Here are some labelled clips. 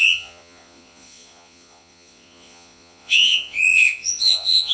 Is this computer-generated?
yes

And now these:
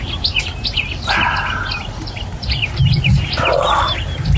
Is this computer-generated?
no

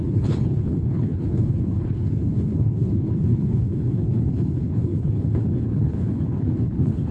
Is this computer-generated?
yes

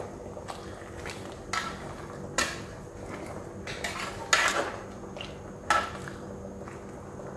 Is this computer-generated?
no